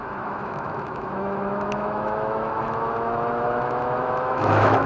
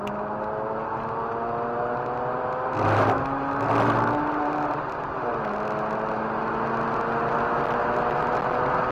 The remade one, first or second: first